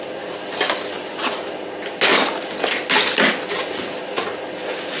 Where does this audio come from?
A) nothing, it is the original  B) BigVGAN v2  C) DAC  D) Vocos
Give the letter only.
A